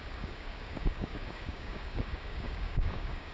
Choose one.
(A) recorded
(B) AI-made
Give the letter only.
B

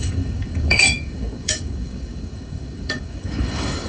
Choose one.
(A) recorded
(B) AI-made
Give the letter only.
B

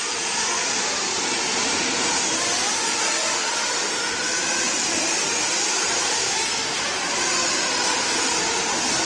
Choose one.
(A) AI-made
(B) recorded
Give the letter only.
B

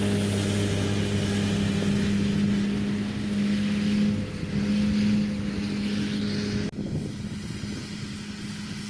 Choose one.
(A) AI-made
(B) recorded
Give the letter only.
B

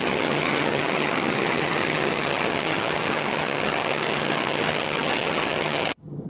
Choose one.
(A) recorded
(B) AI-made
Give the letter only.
B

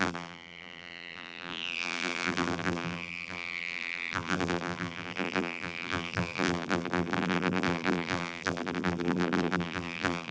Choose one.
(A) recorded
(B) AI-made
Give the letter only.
B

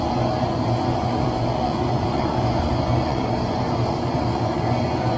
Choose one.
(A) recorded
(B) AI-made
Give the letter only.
B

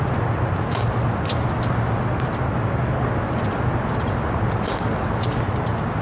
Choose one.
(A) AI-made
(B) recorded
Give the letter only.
B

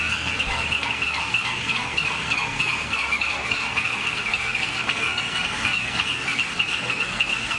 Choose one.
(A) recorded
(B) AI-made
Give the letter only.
B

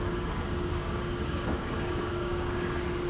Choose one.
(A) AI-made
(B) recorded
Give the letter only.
A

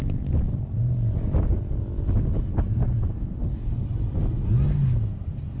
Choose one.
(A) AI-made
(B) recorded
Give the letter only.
B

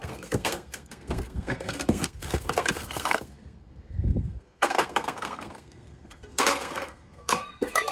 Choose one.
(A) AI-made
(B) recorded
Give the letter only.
A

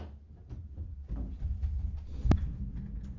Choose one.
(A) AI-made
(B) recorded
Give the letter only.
B